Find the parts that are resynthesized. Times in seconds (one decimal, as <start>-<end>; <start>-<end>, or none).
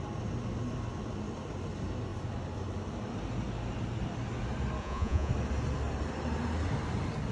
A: 4.8-5.3